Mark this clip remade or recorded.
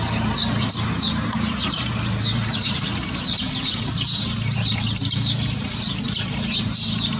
remade